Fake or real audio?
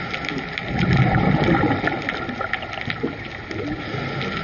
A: real